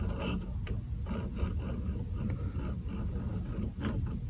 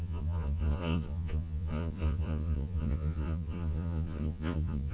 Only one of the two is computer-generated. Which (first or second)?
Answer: second